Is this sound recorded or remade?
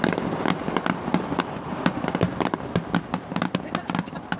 recorded